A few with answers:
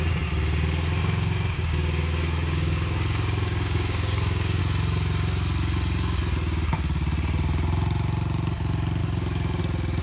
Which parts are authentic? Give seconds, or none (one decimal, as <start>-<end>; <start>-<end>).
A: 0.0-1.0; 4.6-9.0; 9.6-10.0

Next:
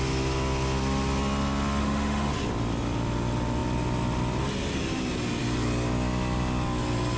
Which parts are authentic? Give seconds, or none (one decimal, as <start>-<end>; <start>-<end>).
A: 0.0-1.8; 2.3-7.2

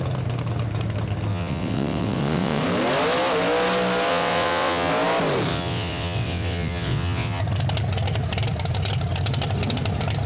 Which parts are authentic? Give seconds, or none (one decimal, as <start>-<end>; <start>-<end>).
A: 0.0-1.3; 2.6-4.1; 4.9-5.5; 7.4-10.3

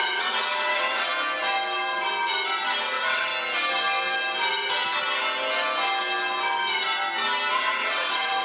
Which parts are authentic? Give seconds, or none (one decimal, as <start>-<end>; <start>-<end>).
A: 1.1-2.8; 3.3-7.5

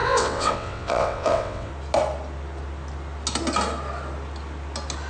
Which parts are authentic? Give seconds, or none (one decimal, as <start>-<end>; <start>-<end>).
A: 1.7-5.1

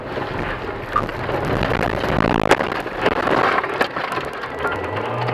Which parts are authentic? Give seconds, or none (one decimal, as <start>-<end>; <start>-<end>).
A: 0.0-5.3